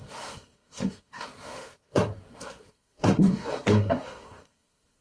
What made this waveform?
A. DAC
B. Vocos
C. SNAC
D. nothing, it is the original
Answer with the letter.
C